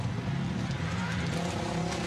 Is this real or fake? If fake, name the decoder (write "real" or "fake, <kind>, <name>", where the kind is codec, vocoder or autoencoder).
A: real